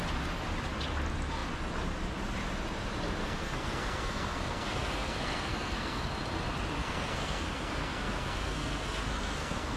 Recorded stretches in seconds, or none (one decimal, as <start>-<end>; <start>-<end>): 0.0-3.2; 6.1-6.8